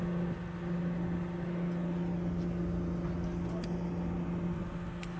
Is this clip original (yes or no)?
yes